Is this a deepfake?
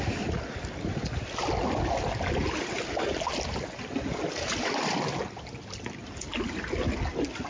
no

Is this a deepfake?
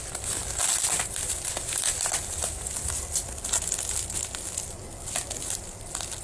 no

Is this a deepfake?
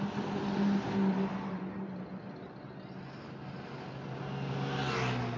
no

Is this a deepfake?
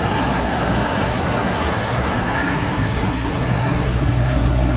yes